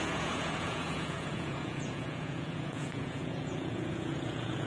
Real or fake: fake